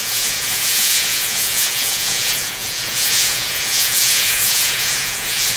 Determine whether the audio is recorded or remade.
remade